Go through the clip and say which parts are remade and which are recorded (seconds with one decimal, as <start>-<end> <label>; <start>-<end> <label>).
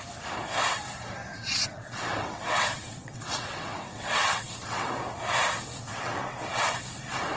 0.0-1.3 recorded; 1.3-4.9 remade; 4.9-5.9 recorded; 5.9-6.8 remade; 6.8-7.4 recorded